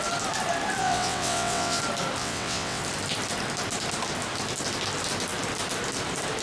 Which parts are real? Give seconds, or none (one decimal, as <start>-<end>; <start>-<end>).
0.0-0.8; 1.8-2.2; 2.8-6.4